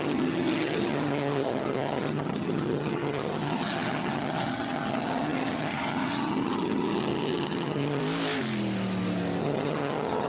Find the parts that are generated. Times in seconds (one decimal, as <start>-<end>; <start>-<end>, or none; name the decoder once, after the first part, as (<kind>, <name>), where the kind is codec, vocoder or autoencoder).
0.0-8.0 (vocoder, HiFi-GAN); 9.4-10.3